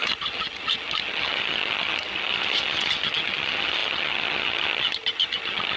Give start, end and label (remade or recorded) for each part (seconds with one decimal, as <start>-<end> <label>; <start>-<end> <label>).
0.0-5.8 remade